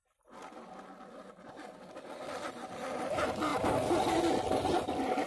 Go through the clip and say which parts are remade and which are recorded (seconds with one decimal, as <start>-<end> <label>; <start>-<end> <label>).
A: 0.0-5.3 recorded